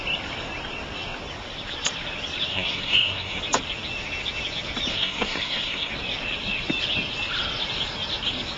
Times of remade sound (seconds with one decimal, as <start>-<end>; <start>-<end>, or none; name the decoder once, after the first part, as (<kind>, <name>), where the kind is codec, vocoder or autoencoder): 2.5-3.4 (codec, SNAC); 4.9-5.9